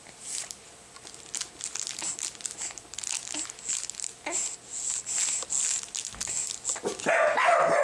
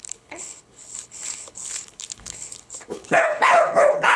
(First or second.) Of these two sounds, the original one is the first